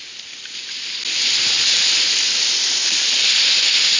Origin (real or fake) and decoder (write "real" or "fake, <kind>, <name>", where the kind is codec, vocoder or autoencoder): real